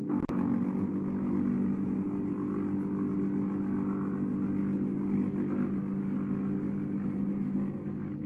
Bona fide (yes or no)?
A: yes